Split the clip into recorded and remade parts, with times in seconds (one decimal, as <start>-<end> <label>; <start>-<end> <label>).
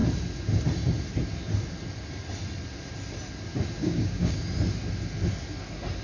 0.0-3.8 recorded; 3.8-4.4 remade; 4.4-6.0 recorded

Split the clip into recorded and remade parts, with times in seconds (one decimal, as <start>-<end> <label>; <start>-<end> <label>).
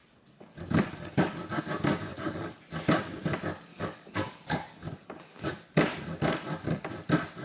0.0-1.6 remade; 1.6-2.1 recorded; 2.1-2.6 remade; 2.6-3.7 recorded; 3.7-5.5 remade; 5.5-7.4 recorded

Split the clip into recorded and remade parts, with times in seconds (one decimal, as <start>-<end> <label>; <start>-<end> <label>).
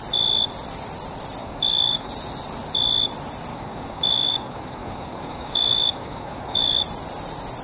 0.0-1.4 recorded; 1.4-2.1 remade; 2.1-3.5 recorded; 3.5-6.8 remade; 6.8-7.6 recorded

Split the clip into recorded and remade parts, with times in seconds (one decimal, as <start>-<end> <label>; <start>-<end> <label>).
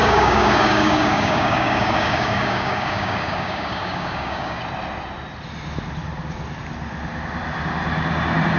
0.0-4.6 remade; 4.6-8.6 recorded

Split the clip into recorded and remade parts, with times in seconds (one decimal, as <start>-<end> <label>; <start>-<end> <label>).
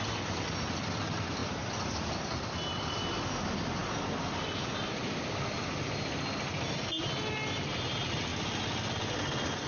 0.0-9.7 recorded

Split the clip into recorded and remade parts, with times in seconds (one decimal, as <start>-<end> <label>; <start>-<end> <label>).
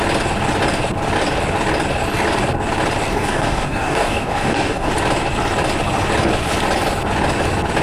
0.0-3.1 recorded; 3.1-4.9 remade; 4.9-7.8 recorded